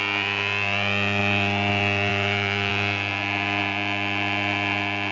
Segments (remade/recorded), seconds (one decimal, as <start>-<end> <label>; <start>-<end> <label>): 0.0-2.1 recorded; 2.1-2.7 remade; 2.7-5.1 recorded